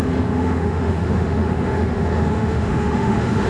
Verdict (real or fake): fake